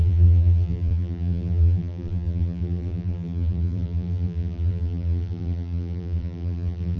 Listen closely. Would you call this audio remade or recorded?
remade